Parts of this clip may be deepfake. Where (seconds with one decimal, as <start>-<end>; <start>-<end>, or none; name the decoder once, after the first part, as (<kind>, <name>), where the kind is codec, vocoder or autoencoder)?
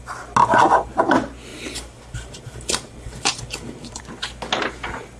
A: 1.5-4.0 (vocoder, BigVGAN v2)